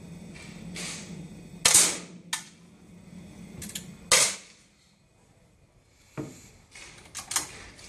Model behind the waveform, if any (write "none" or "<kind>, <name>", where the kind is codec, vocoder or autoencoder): none